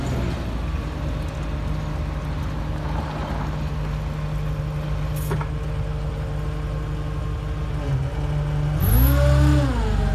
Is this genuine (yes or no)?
yes